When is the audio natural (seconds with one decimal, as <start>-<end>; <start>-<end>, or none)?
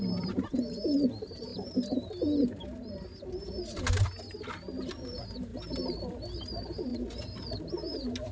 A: 0.0-8.3